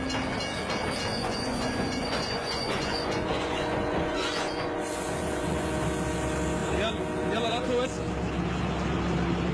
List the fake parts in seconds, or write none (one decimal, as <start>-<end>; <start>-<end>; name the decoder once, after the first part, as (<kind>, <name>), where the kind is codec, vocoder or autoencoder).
1.1-5.7 (vocoder, Vocos)